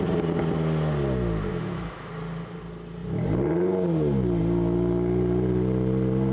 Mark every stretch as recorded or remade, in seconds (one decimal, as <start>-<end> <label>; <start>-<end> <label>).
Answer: 0.0-1.5 recorded; 1.5-2.1 remade; 2.1-6.3 recorded